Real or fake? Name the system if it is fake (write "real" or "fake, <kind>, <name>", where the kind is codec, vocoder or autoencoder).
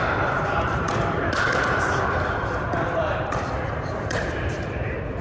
fake, vocoder, BigVGAN v2